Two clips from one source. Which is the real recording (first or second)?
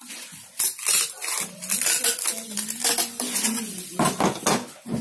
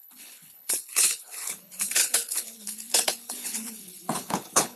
first